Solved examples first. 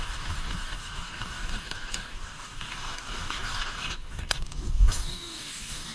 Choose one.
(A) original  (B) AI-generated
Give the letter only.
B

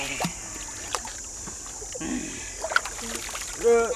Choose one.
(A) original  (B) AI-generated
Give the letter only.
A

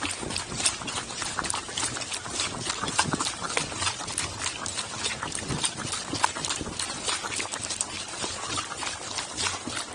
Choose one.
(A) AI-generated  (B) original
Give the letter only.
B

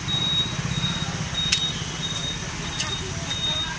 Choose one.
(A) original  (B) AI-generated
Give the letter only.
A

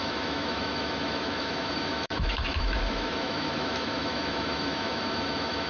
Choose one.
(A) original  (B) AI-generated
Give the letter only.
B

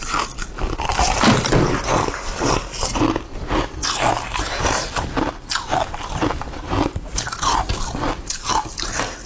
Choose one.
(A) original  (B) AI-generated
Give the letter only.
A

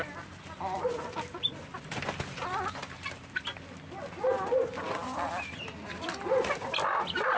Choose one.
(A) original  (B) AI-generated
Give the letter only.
A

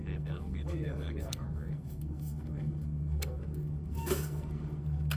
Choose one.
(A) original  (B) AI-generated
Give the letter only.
B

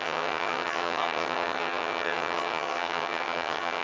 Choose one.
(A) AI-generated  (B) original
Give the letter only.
A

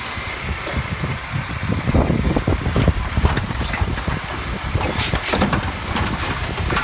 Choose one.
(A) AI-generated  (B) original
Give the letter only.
A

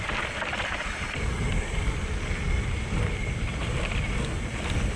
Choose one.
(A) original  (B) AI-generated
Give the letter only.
A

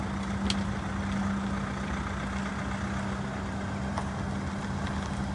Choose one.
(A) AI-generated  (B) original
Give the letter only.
B